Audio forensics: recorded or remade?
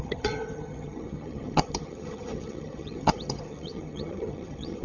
remade